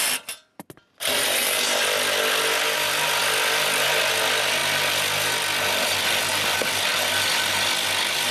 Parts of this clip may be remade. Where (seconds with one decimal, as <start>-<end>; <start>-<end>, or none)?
none